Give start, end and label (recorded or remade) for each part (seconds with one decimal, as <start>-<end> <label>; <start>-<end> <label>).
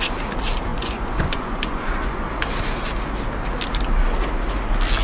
0.0-0.7 recorded; 0.7-2.2 remade; 2.2-5.0 recorded